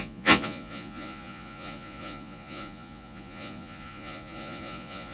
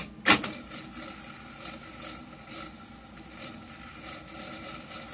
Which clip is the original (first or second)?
second